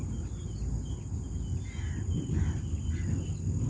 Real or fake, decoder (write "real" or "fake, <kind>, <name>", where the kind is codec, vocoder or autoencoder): real